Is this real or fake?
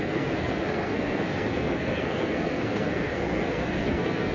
fake